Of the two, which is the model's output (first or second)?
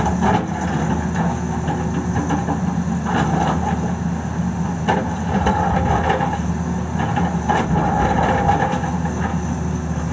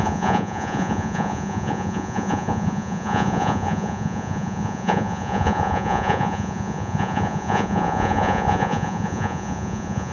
second